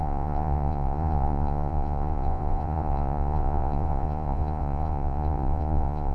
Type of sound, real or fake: fake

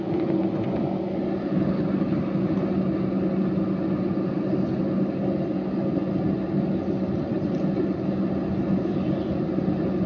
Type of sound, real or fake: real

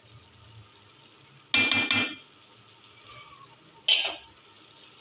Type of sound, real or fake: real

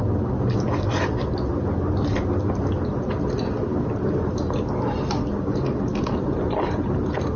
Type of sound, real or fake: real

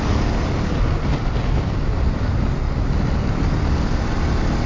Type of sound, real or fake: real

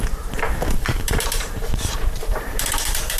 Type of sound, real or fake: fake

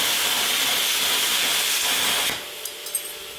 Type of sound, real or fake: real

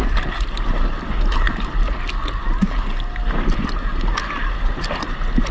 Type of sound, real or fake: real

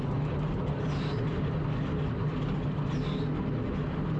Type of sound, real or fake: real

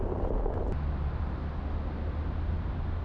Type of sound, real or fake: real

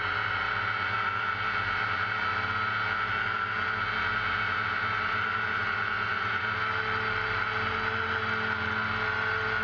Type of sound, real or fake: real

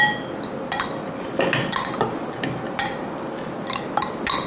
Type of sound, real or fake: real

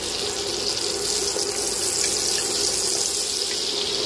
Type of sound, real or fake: real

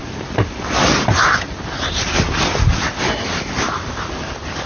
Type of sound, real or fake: real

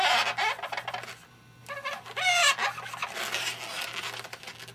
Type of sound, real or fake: real